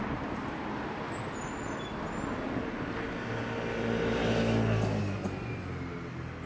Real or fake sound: real